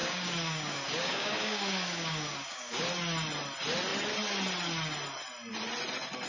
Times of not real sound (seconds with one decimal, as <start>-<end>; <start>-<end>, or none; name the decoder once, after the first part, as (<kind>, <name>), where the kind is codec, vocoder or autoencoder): 0.0-2.8 (codec, DAC)